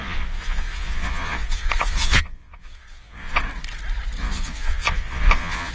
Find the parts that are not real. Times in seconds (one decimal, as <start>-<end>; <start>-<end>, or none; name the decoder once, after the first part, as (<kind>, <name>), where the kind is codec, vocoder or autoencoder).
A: 0.0-3.4 (vocoder, Vocos); 4.2-5.7